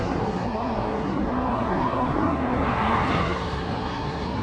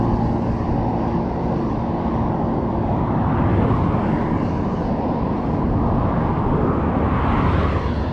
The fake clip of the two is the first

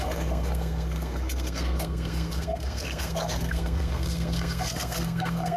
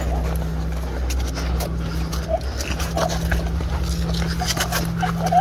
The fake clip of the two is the first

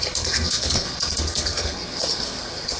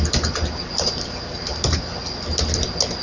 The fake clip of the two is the first